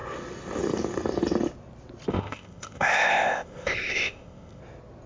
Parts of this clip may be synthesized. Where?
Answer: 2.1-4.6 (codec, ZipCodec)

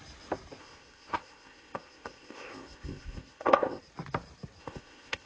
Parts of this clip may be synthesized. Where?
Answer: 0.6-3.8 (codec, ZipCodec); 4.6-5.3